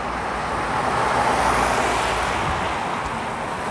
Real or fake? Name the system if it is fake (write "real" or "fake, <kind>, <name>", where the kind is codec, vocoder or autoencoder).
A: real